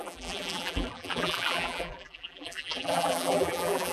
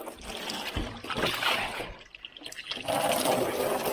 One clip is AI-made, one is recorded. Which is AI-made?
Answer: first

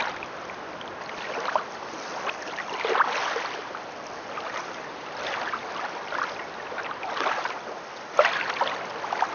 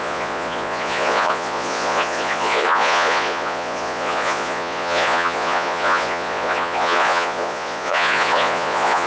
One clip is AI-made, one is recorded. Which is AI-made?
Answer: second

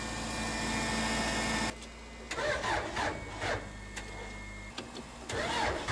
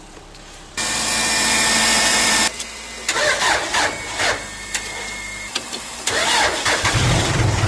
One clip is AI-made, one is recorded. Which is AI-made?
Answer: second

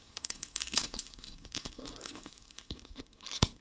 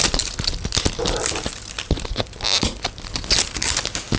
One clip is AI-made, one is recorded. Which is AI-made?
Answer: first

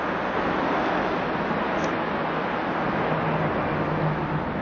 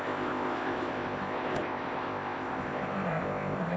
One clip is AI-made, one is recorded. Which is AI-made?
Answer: second